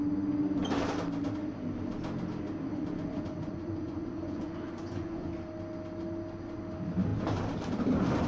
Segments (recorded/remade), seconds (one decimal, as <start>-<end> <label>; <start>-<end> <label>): 0.0-2.7 recorded; 2.7-5.3 remade; 5.3-8.3 recorded